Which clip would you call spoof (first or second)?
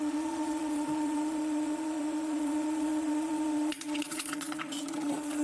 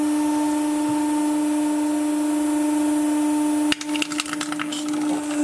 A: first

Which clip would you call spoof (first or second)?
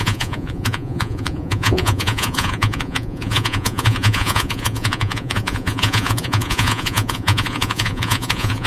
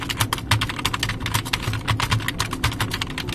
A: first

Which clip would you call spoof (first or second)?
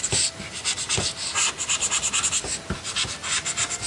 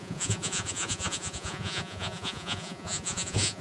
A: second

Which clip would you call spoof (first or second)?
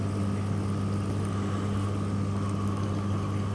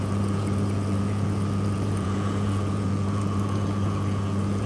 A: second